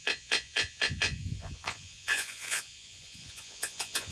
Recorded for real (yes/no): no